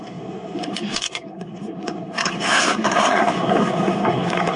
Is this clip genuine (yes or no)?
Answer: no